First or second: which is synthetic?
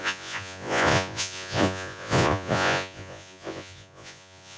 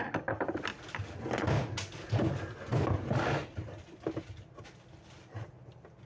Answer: first